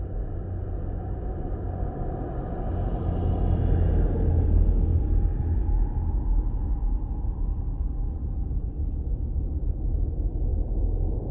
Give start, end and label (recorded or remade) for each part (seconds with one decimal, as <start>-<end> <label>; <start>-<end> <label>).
0.0-11.3 recorded